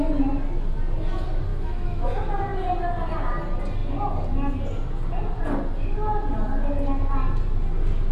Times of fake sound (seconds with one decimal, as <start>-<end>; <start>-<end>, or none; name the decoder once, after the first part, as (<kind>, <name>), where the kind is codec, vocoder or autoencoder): 1.5-2.1 (autoencoder, DAC-VAE)